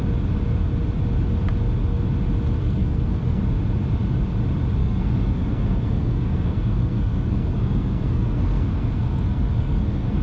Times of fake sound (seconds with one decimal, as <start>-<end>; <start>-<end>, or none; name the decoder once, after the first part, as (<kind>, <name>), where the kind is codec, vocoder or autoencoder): 2.6-3.4 (codec, SNAC); 4.8-10.2